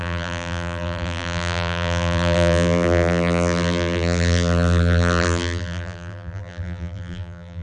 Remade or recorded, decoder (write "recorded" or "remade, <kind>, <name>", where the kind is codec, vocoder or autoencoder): remade, vocoder, BigVGAN v2